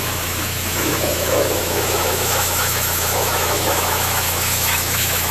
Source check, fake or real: fake